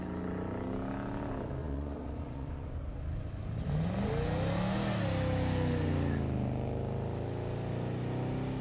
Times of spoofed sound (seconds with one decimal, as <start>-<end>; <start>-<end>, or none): 1.6-2.8